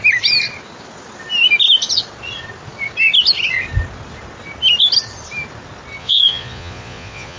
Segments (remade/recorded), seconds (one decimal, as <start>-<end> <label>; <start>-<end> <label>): 0.0-6.0 recorded; 6.0-7.4 remade